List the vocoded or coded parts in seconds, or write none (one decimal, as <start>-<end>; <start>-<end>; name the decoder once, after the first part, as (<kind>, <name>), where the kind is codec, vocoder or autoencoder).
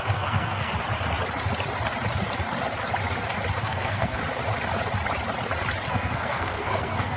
0.0-0.7 (codec, SNAC); 3.6-4.2; 5.9-7.2